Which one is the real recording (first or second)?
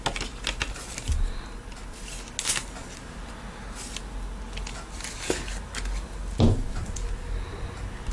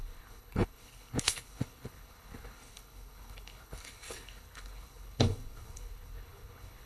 first